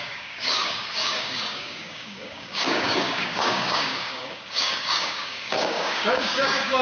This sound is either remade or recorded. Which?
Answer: remade